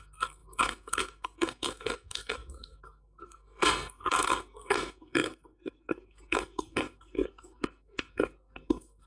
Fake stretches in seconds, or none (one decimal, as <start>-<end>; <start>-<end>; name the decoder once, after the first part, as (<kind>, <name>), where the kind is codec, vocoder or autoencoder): 0.0-9.1 (codec, SNAC)